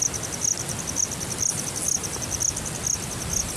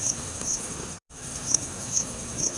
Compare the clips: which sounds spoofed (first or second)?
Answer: second